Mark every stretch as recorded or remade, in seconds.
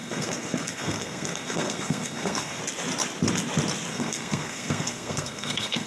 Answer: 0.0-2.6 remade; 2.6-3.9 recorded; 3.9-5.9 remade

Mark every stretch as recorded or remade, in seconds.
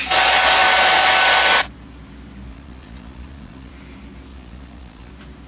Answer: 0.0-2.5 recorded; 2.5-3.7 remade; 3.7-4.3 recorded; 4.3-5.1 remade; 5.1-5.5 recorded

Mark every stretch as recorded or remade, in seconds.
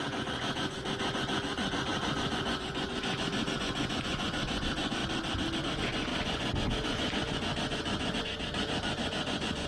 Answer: 0.0-5.0 remade; 5.0-5.6 recorded; 5.6-9.7 remade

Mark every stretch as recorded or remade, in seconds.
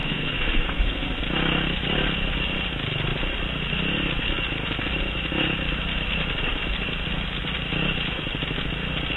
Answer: 0.0-1.2 remade; 1.2-9.2 recorded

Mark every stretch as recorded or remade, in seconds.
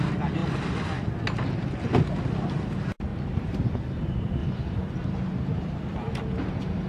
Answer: 0.0-0.4 recorded; 0.4-1.1 remade; 1.1-3.1 recorded; 3.1-3.7 remade; 3.7-4.4 recorded; 4.4-6.9 remade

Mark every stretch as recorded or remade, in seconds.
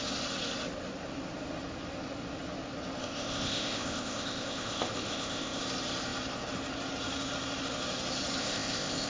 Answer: 0.0-3.0 recorded; 3.0-5.6 remade; 5.6-8.4 recorded; 8.4-9.1 remade